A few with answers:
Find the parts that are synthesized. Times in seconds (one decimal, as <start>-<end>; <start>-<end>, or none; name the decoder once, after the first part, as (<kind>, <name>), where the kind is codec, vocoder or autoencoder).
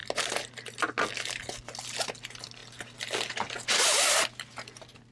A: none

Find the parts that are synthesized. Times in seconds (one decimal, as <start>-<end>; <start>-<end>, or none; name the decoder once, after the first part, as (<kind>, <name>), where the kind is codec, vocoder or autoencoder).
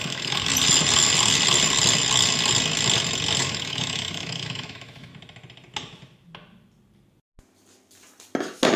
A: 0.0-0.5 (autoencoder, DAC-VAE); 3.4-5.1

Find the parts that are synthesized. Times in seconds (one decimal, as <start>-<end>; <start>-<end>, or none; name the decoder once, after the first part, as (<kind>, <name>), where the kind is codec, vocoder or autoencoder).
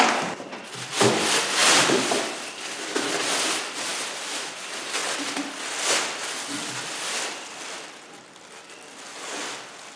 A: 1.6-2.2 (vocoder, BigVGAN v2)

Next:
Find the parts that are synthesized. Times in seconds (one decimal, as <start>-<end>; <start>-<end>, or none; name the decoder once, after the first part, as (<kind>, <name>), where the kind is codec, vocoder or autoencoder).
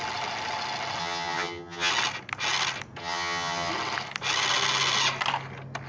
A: 1.0-1.9 (vocoder, HiFi-GAN); 3.0-3.7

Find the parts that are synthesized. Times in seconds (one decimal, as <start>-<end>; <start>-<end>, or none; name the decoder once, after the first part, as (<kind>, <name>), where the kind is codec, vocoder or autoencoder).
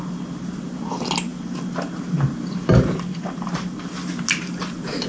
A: none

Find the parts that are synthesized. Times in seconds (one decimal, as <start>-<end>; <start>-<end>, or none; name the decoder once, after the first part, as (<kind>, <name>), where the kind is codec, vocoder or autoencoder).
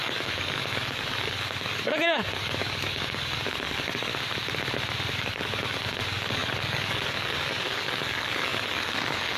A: 0.0-4.1 (codec, DAC); 5.1-9.4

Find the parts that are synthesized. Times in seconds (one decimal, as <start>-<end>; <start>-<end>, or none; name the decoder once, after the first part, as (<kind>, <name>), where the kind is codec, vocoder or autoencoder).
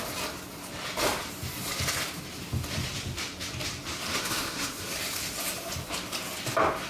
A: 4.1-4.9 (autoencoder, DAC-VAE)